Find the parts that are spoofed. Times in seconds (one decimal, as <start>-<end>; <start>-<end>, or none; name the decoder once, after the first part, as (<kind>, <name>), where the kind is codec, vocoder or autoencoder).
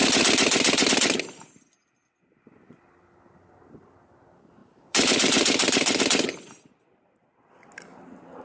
4.6-6.0 (vocoder, BigVGAN v2)